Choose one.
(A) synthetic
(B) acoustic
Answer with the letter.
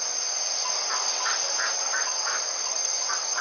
B